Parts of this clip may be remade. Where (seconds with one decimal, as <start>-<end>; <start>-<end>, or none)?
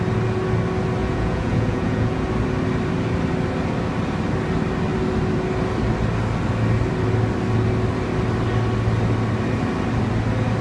1.0-2.3